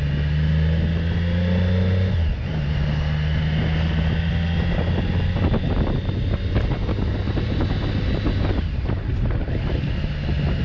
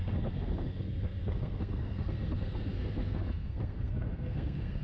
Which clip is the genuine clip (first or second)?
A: first